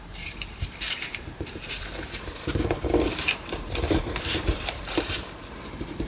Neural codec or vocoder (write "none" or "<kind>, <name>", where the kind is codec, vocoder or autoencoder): vocoder, BigVGAN v2